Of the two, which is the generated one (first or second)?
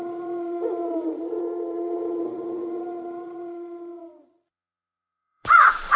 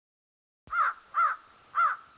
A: first